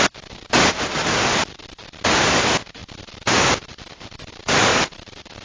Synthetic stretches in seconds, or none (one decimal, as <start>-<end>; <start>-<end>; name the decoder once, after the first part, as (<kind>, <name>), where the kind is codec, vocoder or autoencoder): 1.0-2.0 (vocoder, BigVGAN v2); 2.8-4.3; 4.7-5.4